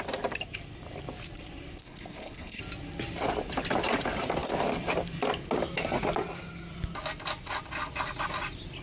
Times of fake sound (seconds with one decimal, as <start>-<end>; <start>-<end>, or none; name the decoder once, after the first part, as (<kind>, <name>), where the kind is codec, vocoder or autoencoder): 1.8-2.6 (codec, HILCodec)